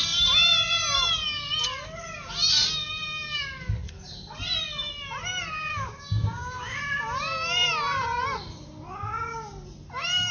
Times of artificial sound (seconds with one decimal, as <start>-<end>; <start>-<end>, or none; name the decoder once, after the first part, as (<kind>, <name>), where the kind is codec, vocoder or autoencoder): 5.7-6.8 (codec, DAC)